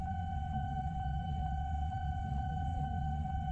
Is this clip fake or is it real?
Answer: fake